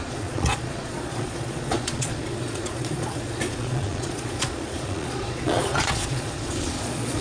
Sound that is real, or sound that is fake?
fake